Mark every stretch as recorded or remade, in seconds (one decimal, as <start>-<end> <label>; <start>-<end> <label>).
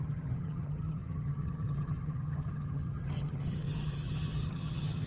0.0-5.1 remade